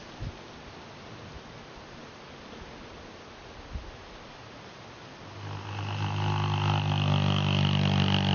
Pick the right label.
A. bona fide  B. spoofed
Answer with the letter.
A